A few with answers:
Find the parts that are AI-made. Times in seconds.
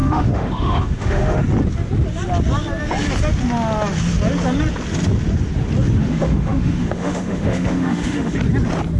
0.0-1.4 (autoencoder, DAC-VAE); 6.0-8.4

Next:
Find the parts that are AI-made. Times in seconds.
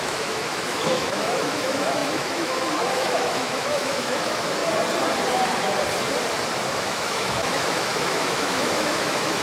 0.0-4.6 (autoencoder, DAC-VAE); 6.7-9.4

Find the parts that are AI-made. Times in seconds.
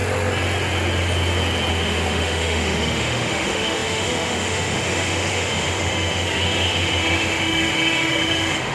1.7-8.7 (autoencoder, DAC-VAE)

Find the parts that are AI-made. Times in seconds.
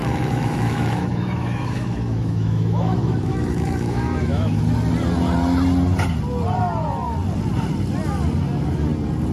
0.0-4.6 (autoencoder, DAC-VAE)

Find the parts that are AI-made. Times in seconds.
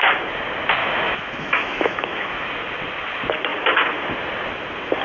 0.8-2.5 (autoencoder, DAC-VAE)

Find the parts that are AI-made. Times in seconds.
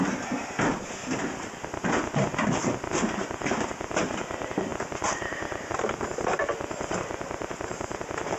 none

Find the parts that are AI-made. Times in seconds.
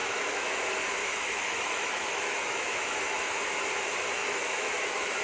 0.0-0.6 (autoencoder, DAC-VAE); 1.0-3.4; 4.2-5.2